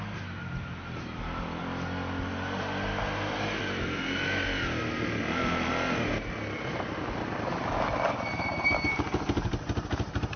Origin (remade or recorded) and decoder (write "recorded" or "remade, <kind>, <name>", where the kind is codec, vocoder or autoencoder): recorded